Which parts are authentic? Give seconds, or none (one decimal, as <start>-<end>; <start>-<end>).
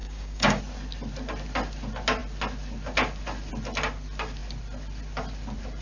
0.6-5.8